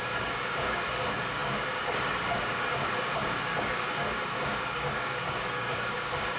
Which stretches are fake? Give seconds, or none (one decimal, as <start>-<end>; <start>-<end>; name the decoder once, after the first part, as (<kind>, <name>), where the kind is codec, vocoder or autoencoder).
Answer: 0.0-6.4 (codec, DAC)